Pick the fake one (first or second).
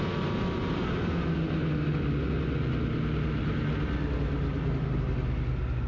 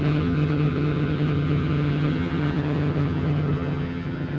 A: second